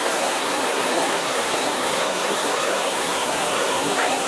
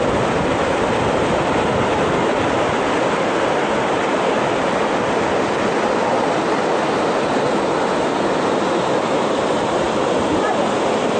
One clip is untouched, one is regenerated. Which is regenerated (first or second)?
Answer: first